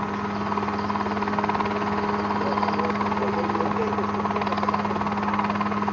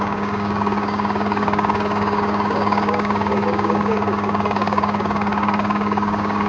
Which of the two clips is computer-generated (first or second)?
second